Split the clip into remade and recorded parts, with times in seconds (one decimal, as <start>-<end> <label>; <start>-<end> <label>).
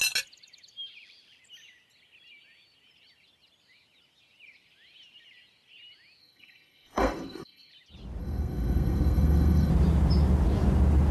0.0-6.2 recorded; 6.2-7.7 remade; 7.7-8.2 recorded; 8.2-9.7 remade; 9.7-11.1 recorded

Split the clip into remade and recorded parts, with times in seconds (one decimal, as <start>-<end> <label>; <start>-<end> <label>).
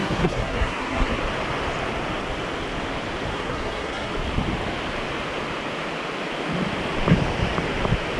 0.0-1.2 remade; 1.2-3.3 recorded; 3.3-4.1 remade; 4.1-8.2 recorded